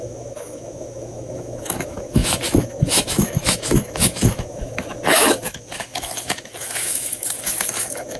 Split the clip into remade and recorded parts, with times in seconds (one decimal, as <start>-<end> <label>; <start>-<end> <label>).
0.0-8.2 remade